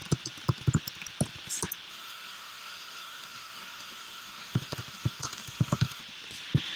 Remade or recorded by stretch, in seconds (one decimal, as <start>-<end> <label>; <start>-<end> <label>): 0.0-1.9 recorded; 1.9-6.0 remade; 6.0-6.8 recorded